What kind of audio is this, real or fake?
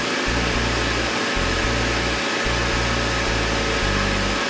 real